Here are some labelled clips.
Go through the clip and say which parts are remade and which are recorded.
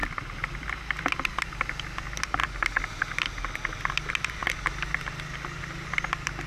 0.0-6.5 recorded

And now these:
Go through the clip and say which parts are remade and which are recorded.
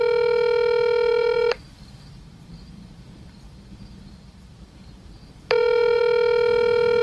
0.0-1.1 recorded; 1.1-4.5 remade; 4.5-5.2 recorded; 5.2-6.0 remade; 6.0-7.0 recorded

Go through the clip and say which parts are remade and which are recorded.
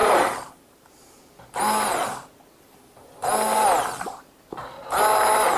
0.0-1.2 remade; 1.2-5.6 recorded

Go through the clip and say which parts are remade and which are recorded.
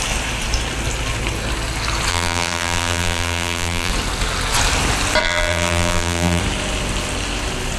0.0-2.1 recorded; 2.1-3.9 remade; 3.9-5.2 recorded; 5.2-6.4 remade; 6.4-7.8 recorded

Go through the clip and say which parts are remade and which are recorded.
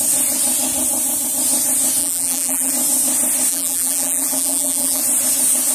0.0-2.0 recorded; 2.0-2.7 remade; 2.7-3.5 recorded; 3.5-5.0 remade; 5.0-5.7 recorded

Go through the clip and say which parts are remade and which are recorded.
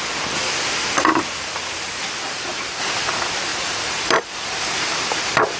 0.0-5.6 recorded